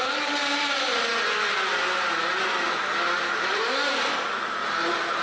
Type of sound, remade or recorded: recorded